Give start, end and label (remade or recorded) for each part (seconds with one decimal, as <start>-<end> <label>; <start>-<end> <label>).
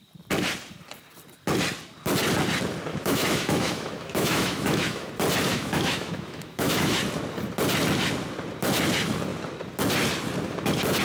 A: 0.0-2.9 recorded; 2.9-5.1 remade; 5.1-5.5 recorded; 5.5-7.0 remade; 7.0-11.0 recorded